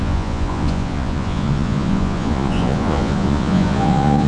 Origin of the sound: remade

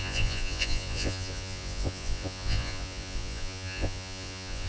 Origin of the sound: remade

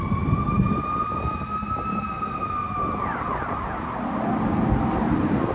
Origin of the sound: recorded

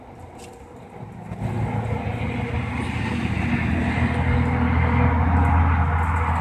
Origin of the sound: recorded